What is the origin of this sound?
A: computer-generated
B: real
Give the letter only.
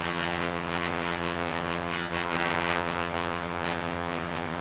A